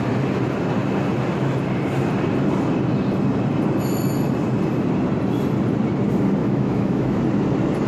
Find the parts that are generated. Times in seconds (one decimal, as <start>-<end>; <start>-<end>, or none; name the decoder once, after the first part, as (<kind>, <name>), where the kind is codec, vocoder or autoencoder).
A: 6.4-7.2 (autoencoder, DAC-VAE)